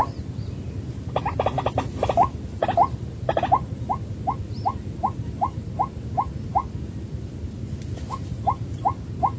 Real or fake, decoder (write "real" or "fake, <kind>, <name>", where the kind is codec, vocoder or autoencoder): real